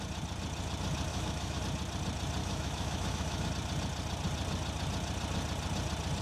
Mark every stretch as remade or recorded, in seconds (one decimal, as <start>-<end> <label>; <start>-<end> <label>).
0.0-1.1 recorded; 1.1-1.6 remade; 1.6-2.4 recorded; 2.4-3.5 remade; 3.5-6.2 recorded